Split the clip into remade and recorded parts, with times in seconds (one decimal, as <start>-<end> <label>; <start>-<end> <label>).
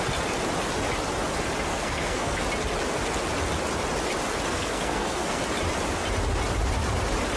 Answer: 0.0-1.7 recorded; 1.7-2.4 remade; 2.4-4.5 recorded; 4.5-5.4 remade; 5.4-7.4 recorded